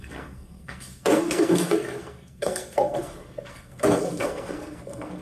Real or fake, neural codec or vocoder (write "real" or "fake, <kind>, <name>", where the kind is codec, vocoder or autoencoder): fake, codec, SNAC